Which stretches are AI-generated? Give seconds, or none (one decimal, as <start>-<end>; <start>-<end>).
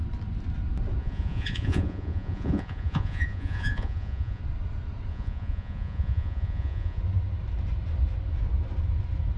1.0-4.4; 5.1-7.0